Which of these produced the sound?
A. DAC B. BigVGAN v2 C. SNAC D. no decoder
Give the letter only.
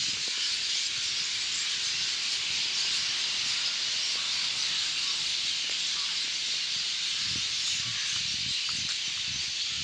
D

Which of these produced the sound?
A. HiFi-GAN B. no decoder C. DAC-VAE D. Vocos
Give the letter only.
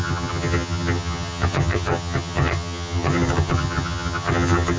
A